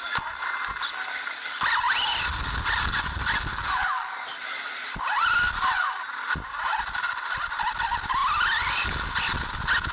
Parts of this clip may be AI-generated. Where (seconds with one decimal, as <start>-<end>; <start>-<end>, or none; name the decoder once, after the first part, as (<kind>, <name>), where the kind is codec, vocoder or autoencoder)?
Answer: 3.5-4.4 (codec, DAC)